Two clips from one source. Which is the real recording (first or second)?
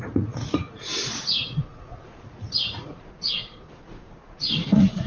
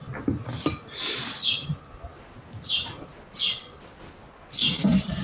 second